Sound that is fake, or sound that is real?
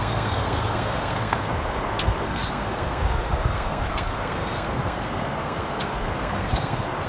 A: fake